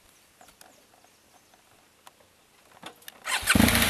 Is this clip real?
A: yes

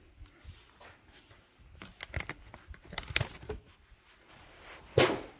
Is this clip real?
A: yes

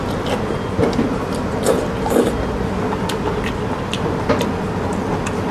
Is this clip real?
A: yes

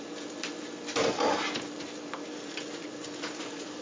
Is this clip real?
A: no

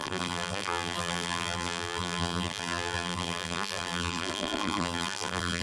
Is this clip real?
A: no